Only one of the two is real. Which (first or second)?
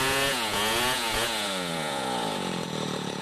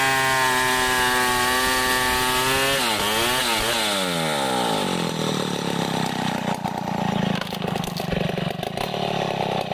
second